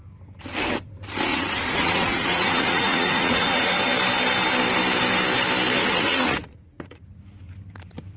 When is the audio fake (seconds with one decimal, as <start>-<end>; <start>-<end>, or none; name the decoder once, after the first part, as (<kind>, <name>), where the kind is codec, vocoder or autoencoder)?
1.3-3.8 (vocoder, Vocos); 5.8-7.2